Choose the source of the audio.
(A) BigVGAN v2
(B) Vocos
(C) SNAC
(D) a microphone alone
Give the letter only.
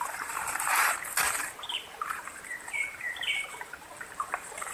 A